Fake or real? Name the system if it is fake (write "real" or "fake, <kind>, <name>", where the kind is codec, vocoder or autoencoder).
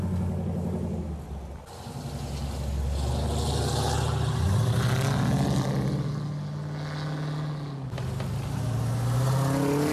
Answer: real